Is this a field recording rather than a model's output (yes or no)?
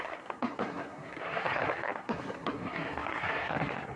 no